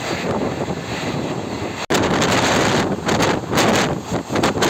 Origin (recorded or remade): recorded